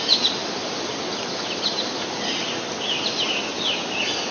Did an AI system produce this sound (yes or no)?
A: no